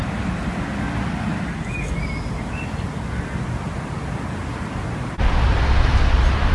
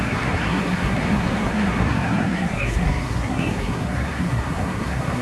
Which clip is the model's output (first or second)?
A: second